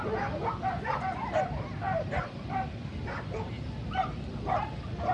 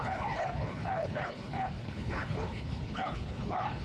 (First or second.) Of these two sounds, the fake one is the second